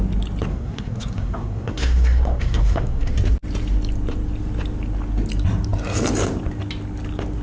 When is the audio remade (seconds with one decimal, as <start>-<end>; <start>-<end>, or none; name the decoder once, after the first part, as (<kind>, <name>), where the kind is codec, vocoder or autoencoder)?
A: 0.5-3.1 (codec, SNAC)